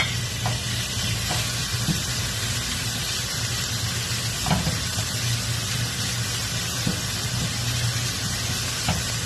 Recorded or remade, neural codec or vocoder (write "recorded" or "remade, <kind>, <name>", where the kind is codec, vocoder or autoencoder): recorded